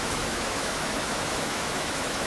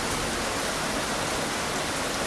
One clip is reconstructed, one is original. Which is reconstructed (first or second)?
first